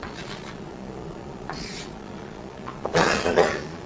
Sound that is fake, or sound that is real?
fake